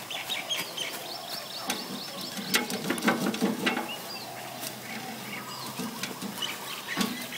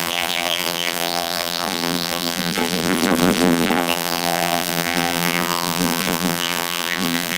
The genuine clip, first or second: first